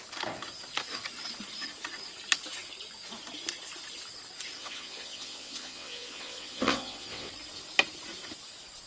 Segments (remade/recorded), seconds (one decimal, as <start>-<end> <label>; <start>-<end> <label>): 0.0-4.6 recorded; 4.6-7.3 remade; 7.3-8.9 recorded